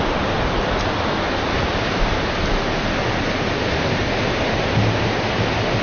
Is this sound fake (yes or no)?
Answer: no